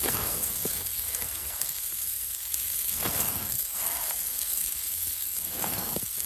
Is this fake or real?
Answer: fake